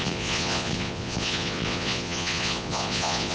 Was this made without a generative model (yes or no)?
no